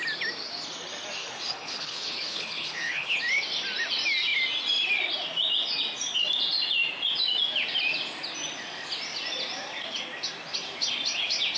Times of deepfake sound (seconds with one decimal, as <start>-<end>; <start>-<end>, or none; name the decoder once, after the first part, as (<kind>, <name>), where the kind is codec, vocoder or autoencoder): 1.2-3.2 (codec, HILCodec)